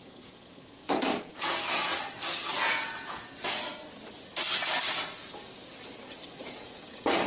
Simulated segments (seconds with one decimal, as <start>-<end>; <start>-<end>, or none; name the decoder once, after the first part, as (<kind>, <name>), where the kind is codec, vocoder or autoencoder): 0.0-1.9 (vocoder, Vocos); 2.6-3.7; 6.4-7.3